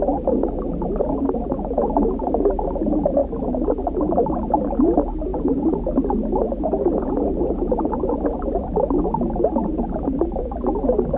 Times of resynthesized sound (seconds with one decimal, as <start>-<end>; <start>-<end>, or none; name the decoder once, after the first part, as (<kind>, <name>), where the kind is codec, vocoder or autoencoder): none